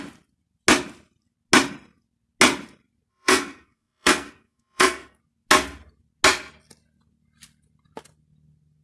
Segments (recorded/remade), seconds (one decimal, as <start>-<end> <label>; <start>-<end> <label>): 0.0-3.1 recorded; 3.1-5.2 remade; 5.2-8.8 recorded